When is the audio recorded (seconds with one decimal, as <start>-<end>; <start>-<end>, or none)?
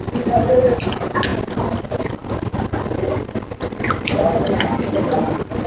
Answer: 0.0-5.7